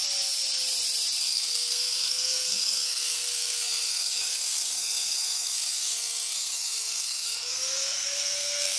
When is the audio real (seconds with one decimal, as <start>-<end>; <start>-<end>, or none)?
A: 0.0-1.2